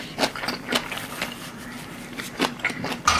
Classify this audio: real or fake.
real